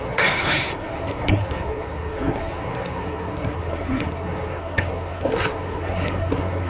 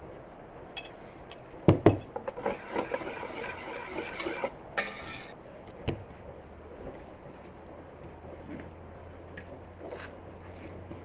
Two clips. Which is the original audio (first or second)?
second